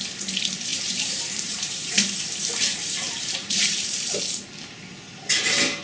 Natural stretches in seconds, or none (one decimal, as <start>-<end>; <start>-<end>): 0.0-0.7; 4.2-5.8